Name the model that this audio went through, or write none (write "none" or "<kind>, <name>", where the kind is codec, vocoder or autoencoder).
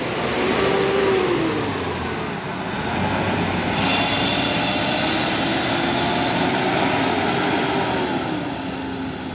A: none